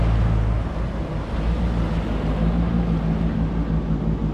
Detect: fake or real real